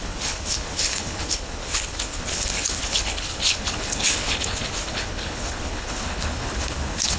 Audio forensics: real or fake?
fake